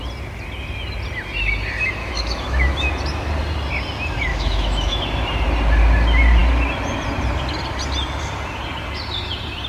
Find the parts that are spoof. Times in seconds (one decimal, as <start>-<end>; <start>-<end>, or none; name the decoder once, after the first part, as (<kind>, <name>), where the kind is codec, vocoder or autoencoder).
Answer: 2.0-2.9 (autoencoder, DAC-VAE); 4.3-5.0